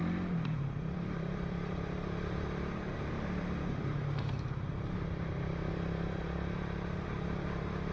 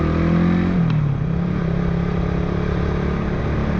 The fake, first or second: first